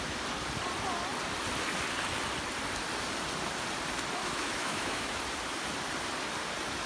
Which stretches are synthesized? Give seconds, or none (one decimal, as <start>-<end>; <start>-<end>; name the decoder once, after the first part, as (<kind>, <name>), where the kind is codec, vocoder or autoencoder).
4.2-5.2 (autoencoder, DAC-VAE)